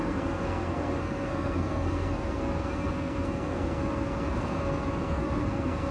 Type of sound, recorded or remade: remade